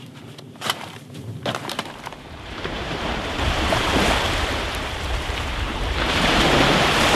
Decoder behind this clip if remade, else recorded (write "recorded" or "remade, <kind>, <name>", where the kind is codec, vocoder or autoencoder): remade, vocoder, BigVGAN v2